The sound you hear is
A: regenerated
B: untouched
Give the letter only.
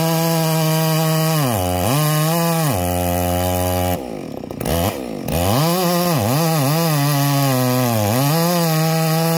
B